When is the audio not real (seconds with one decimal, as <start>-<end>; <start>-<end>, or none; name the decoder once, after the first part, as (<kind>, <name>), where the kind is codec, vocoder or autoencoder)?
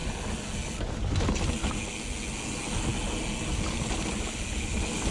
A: none